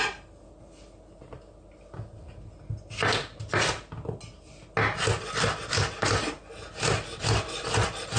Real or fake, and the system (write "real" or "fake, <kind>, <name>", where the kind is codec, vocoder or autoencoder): real